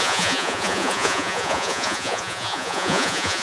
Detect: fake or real fake